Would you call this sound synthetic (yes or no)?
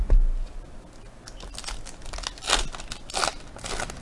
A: no